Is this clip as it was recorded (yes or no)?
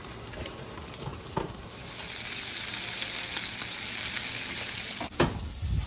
yes